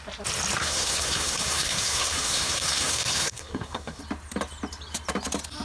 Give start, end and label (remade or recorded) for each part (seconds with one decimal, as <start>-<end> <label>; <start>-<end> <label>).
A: 0.0-0.6 recorded; 0.6-4.0 remade; 4.0-5.6 recorded